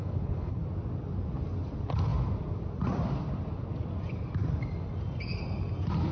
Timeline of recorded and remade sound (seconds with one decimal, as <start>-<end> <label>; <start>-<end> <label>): 0.0-0.6 remade; 0.6-6.1 recorded